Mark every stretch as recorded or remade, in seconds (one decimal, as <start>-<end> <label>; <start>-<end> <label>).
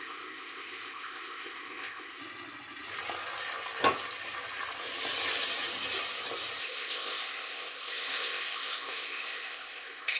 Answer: 0.0-2.2 remade; 2.2-6.6 recorded; 6.6-10.2 remade